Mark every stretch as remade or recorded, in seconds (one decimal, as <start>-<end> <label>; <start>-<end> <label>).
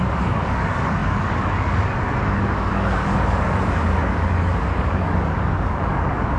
0.0-6.4 remade